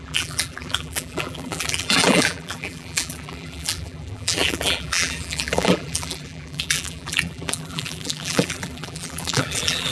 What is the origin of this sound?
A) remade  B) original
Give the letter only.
A